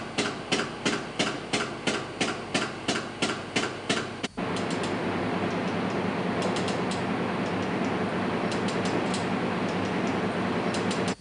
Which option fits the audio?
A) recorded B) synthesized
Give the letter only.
A